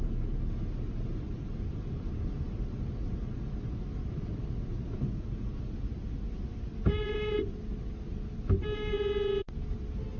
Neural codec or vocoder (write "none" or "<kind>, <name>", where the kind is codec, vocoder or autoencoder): none